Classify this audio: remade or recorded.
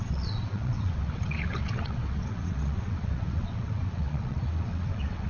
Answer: remade